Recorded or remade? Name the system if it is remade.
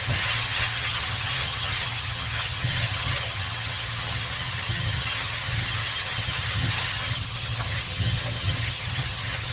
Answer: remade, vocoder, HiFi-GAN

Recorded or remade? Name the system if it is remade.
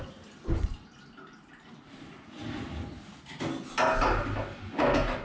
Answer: recorded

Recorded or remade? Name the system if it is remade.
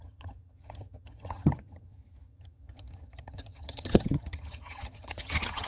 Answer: remade, vocoder, HiFi-GAN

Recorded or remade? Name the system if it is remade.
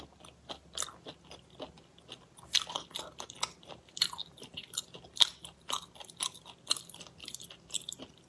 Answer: recorded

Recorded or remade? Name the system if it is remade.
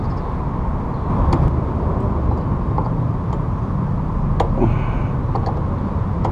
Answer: recorded